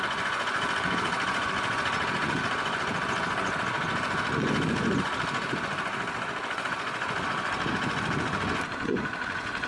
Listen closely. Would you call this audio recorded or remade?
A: remade